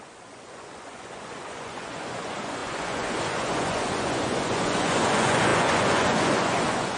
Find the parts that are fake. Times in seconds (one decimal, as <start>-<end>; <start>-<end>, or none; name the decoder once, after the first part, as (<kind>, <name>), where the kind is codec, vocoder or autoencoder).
0.0-7.0 (vocoder, Vocos)